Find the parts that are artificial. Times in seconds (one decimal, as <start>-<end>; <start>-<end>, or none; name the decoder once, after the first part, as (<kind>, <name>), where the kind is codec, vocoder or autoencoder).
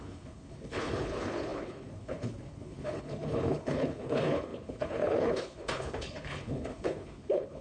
0.0-7.6 (codec, HILCodec)